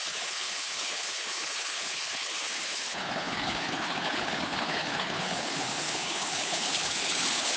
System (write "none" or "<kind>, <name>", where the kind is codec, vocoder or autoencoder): codec, HILCodec